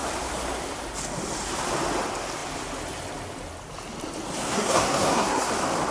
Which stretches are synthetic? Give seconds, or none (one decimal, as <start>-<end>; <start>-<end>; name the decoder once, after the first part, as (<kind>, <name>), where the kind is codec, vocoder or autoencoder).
4.4-5.5 (codec, SNAC)